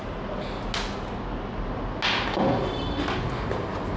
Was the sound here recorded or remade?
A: recorded